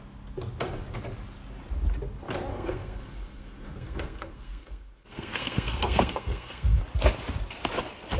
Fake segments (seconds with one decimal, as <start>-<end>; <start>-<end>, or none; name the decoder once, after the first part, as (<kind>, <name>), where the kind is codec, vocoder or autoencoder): 2.5-6.8 (codec, SNAC)